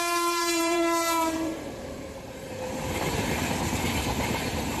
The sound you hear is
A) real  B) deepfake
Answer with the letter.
B